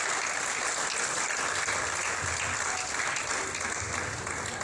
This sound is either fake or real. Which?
real